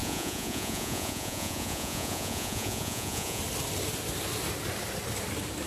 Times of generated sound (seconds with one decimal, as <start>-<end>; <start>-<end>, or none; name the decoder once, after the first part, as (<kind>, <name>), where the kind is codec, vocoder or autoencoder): 0.0-3.4 (vocoder, Vocos)